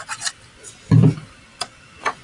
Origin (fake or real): real